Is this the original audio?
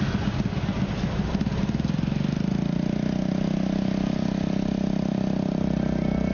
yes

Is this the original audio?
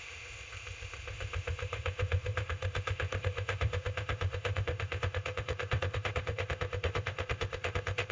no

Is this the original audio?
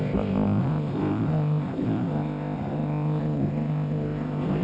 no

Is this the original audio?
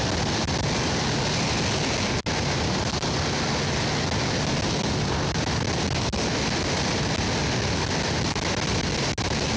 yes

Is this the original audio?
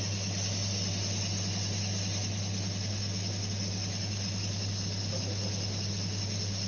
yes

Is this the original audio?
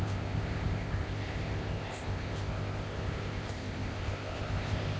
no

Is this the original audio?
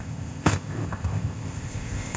no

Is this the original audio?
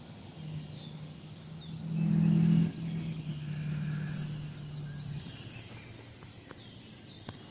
yes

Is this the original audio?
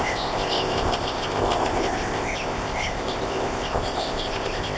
no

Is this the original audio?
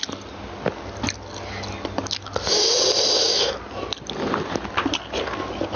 yes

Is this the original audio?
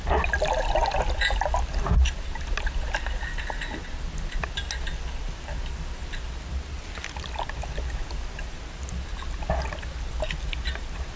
yes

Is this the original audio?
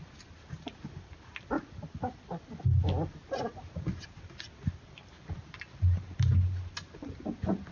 yes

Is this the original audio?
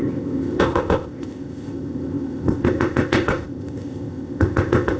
no